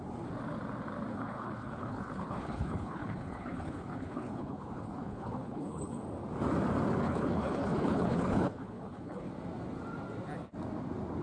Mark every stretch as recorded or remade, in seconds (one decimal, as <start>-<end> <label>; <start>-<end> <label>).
0.0-1.1 recorded; 1.1-6.0 remade; 6.0-7.0 recorded; 7.0-9.3 remade; 9.3-11.2 recorded